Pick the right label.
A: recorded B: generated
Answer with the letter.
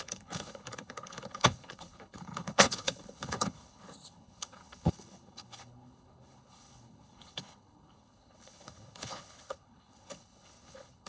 B